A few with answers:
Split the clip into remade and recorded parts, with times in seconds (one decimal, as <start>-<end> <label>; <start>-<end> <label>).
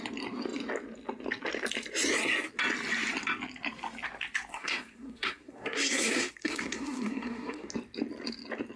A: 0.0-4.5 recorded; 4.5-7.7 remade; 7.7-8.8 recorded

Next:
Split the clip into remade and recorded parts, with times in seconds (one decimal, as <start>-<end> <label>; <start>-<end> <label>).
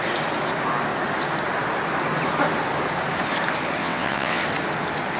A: 0.0-3.8 recorded; 3.8-4.4 remade; 4.4-5.2 recorded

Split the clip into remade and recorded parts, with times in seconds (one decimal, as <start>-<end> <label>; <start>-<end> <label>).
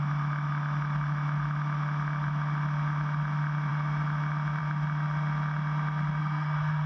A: 0.0-6.2 recorded; 6.2-6.9 remade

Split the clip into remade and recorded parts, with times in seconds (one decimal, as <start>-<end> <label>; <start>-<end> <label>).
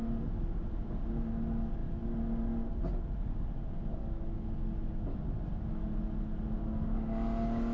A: 0.0-7.7 recorded